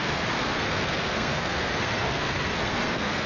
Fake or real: fake